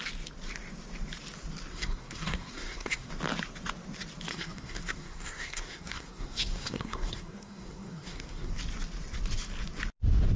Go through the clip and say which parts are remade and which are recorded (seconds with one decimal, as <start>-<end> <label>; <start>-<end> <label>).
0.0-1.7 recorded; 1.7-3.1 remade; 3.1-4.3 recorded; 4.3-8.5 remade; 8.5-10.4 recorded